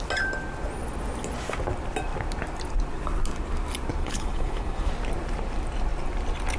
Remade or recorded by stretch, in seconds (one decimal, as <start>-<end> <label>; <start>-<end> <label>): 0.0-4.0 recorded; 4.0-4.9 remade; 4.9-6.6 recorded